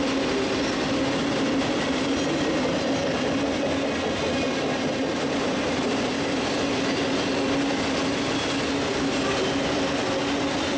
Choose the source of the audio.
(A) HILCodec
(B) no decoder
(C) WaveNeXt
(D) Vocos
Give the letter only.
B